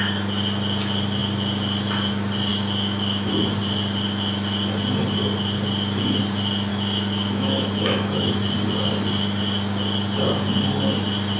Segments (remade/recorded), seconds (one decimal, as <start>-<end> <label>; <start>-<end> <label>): 0.0-2.5 recorded; 2.5-3.3 remade; 3.3-6.7 recorded; 6.7-8.3 remade; 8.3-11.4 recorded

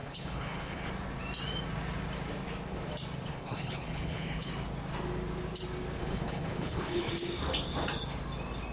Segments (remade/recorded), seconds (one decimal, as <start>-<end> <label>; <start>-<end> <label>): 0.0-0.9 remade; 0.9-3.3 recorded; 3.3-4.5 remade; 4.5-6.0 recorded; 6.0-7.1 remade; 7.1-8.7 recorded

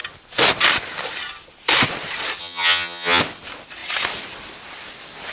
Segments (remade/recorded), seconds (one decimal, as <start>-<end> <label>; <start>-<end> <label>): 0.0-2.4 recorded; 2.4-3.2 remade; 3.2-5.3 recorded

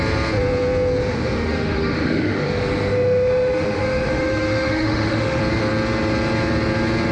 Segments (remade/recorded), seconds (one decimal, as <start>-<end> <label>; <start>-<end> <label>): 0.0-1.1 recorded; 1.1-5.4 remade; 5.4-7.1 recorded

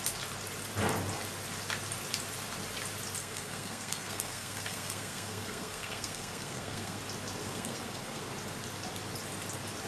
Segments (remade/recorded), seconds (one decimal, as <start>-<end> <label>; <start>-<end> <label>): 0.0-3.2 recorded; 3.2-7.0 remade; 7.0-7.4 recorded; 7.4-8.2 remade; 8.2-9.9 recorded

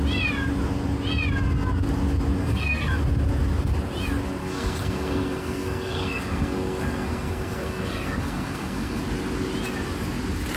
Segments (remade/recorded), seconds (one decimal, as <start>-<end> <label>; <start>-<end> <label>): 0.0-2.4 recorded; 2.4-3.0 remade; 3.0-4.4 recorded; 4.4-9.0 remade; 9.0-10.6 recorded

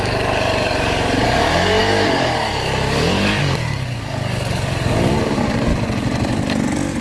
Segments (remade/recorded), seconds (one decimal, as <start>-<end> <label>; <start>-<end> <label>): 0.0-5.7 remade; 5.7-7.0 recorded